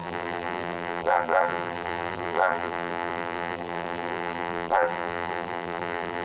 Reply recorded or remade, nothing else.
remade